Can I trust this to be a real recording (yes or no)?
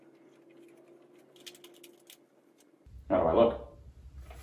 yes